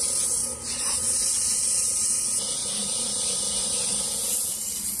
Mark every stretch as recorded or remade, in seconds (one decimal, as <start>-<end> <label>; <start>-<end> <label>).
0.0-0.4 recorded; 0.4-1.3 remade; 1.3-2.6 recorded; 2.6-4.0 remade; 4.0-5.0 recorded